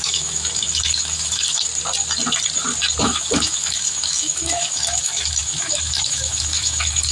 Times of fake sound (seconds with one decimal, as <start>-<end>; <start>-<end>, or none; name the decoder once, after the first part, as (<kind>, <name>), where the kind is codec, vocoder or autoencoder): 0.0-1.7 (autoencoder, DAC-VAE); 3.0-7.1